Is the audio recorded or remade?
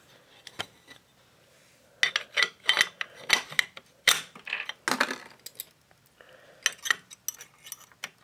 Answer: recorded